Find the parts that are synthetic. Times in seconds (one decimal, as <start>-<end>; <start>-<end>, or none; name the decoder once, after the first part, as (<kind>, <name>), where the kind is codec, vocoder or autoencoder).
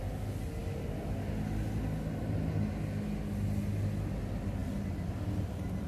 none